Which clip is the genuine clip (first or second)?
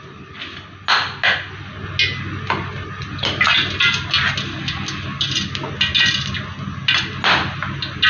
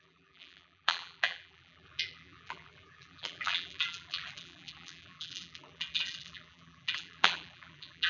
first